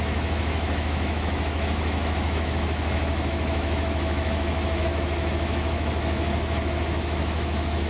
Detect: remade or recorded remade